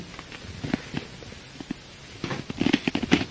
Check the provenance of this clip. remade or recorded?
recorded